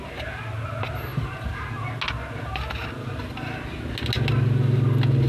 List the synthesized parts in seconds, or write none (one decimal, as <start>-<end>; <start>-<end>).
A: none